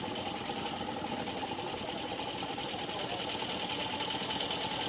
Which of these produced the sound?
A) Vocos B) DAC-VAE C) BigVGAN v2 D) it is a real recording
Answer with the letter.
D